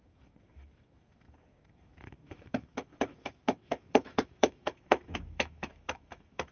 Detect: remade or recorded remade